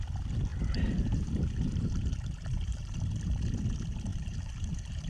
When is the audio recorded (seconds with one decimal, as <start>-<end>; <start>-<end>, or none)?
0.0-0.5; 3.6-4.1